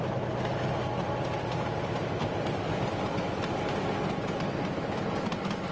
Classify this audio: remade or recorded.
recorded